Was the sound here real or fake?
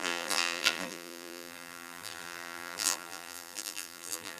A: fake